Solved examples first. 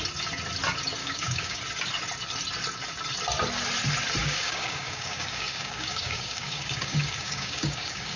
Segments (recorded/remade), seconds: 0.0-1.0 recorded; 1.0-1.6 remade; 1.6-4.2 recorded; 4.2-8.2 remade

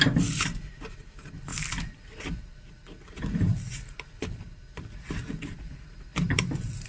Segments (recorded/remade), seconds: 0.0-1.5 recorded; 1.5-5.6 remade; 5.6-6.1 recorded; 6.1-6.9 remade